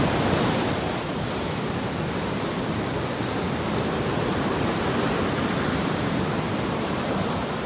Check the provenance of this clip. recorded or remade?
remade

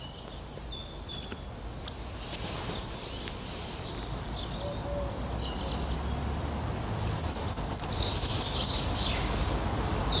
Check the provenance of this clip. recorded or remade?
recorded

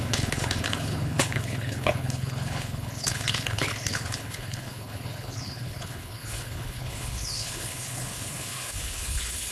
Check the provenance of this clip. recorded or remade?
remade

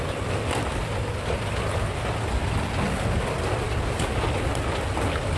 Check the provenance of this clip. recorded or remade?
recorded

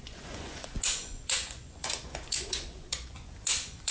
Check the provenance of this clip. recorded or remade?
remade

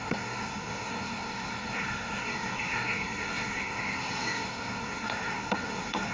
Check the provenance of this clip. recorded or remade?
remade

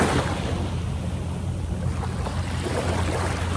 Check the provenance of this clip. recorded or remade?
recorded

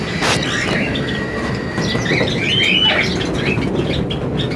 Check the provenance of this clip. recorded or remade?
recorded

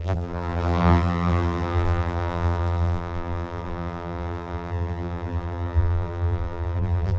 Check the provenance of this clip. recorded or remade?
remade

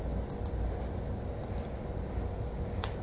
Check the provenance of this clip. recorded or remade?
recorded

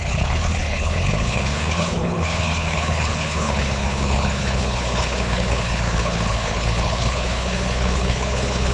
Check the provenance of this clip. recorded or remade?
remade